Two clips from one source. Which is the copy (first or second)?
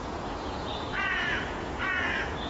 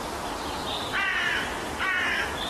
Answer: first